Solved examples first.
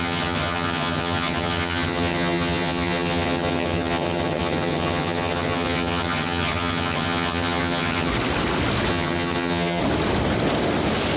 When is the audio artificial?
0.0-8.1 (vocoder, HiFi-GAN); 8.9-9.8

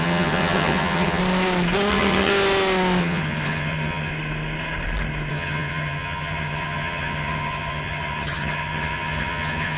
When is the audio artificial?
0.0-1.2 (vocoder, HiFi-GAN); 1.9-2.3; 3.0-4.1; 5.3-9.8

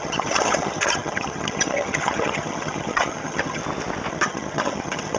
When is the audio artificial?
0.0-3.6 (vocoder, HiFi-GAN); 4.1-5.2

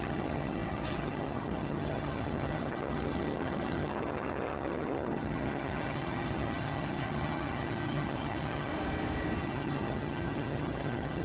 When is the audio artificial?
0.0-8.7 (vocoder, HiFi-GAN); 9.4-11.2

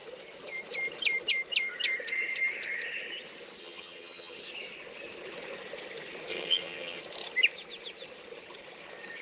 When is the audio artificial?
3.6-4.4 (vocoder, HiFi-GAN); 6.3-7.0